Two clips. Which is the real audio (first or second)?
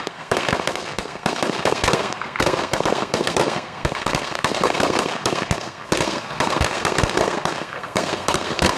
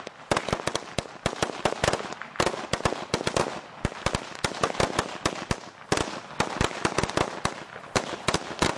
second